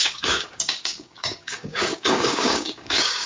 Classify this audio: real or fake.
fake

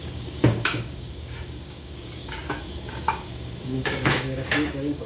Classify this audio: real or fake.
fake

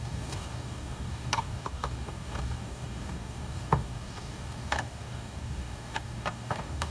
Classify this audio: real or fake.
fake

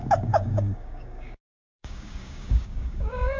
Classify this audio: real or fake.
fake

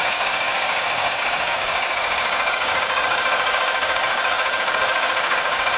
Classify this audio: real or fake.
fake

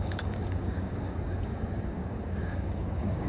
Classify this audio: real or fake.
fake